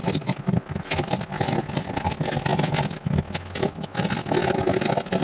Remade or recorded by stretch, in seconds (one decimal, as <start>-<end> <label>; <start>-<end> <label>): 0.0-5.2 recorded